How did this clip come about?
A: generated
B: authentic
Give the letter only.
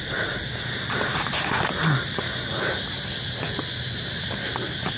B